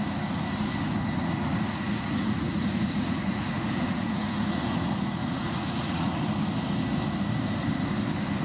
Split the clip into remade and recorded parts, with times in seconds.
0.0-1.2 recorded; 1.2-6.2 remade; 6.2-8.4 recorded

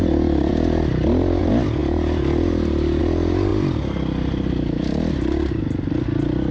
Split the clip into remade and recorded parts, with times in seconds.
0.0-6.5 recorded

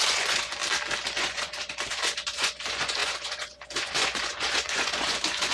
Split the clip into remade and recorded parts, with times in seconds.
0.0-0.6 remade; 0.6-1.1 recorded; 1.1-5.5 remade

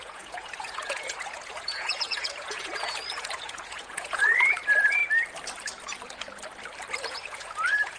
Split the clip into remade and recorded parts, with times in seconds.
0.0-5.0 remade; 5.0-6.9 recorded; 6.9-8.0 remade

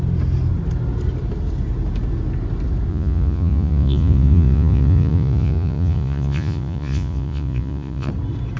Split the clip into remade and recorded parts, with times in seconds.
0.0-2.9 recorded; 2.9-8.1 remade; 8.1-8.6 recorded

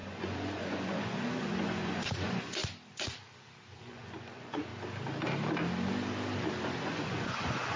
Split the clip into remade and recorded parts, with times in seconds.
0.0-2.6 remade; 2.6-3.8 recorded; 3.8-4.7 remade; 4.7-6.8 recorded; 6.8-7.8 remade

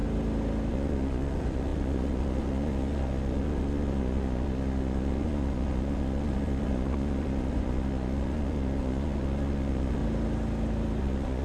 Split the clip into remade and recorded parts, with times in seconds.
0.0-0.7 recorded; 0.7-10.0 remade; 10.0-11.0 recorded; 11.0-11.4 remade